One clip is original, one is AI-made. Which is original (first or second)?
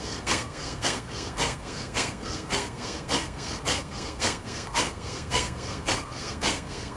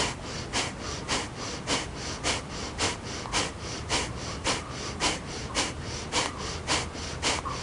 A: second